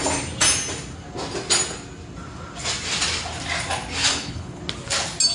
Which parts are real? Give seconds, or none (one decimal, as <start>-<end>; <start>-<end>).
0.0-4.1; 4.6-5.3